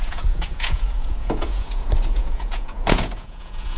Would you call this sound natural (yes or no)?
no